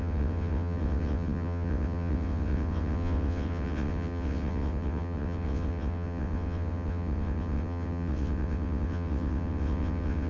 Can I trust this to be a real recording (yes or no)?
no